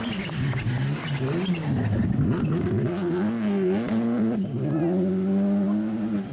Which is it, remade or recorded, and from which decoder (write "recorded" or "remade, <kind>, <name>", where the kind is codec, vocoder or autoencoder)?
recorded